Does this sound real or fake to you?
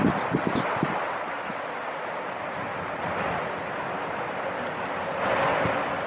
real